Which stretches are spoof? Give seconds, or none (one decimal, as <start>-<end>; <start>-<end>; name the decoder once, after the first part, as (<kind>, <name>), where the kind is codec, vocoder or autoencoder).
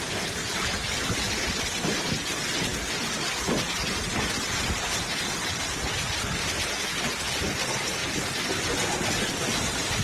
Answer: 0.0-0.8 (vocoder, BigVGAN v2); 1.4-2.7; 7.2-8.0